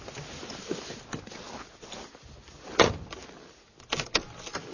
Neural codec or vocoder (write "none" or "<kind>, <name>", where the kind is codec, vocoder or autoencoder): none